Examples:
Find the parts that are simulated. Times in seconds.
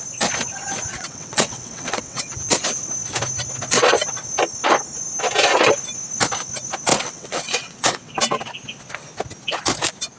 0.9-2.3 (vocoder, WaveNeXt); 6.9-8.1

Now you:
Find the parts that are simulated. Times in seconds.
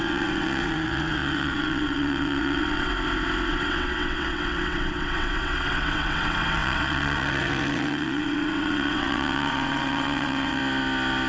0.0-2.9 (vocoder, WaveNeXt); 3.5-10.6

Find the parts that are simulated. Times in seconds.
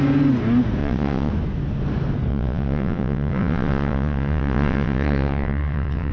0.8-1.3 (vocoder, WaveNeXt); 2.3-6.1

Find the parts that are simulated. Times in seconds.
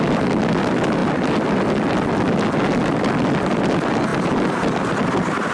none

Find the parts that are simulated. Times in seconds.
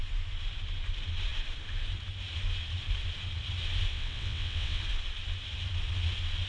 3.9-4.8 (vocoder, WaveNeXt)